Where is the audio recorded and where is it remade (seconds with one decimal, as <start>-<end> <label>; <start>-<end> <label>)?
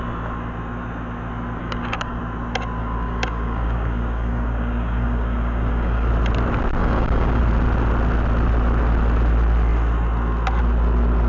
0.0-1.6 recorded; 1.6-2.2 remade; 2.2-2.8 recorded; 2.8-6.1 remade; 6.1-6.8 recorded; 6.8-7.4 remade; 7.4-11.3 recorded